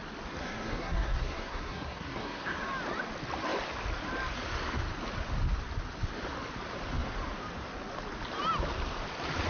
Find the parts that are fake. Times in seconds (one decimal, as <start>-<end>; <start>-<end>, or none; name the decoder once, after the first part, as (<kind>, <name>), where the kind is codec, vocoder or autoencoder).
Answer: 0.4-2.6 (codec, SNAC)

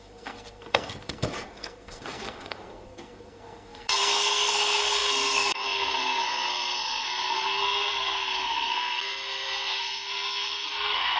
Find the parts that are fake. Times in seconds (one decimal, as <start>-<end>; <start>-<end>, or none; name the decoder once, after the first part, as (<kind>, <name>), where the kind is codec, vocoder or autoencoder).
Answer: 0.0-11.2 (codec, SNAC)

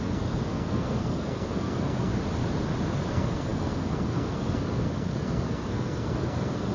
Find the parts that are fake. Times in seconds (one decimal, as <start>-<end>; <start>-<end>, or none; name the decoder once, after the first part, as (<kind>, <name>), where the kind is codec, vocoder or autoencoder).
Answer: 0.0-2.1 (codec, SNAC); 3.1-6.7

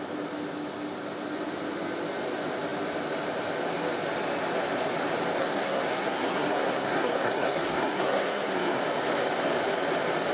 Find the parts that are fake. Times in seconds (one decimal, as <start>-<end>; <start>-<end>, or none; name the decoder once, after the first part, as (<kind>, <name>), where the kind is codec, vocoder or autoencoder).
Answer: 5.4-8.8 (codec, SNAC)

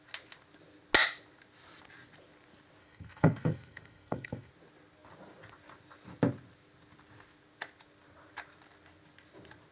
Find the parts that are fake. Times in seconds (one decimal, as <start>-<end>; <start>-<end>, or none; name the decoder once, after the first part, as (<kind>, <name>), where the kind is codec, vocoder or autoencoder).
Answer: 2.8-4.5 (codec, SNAC)

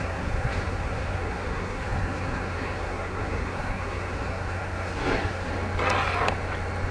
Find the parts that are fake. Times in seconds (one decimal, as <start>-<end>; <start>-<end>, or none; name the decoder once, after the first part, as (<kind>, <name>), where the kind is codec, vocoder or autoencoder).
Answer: 0.0-5.5 (codec, SNAC)

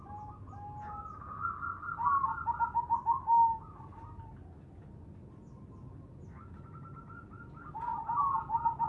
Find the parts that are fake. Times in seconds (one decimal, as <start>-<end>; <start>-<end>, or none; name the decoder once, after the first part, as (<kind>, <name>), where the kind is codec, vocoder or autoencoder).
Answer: none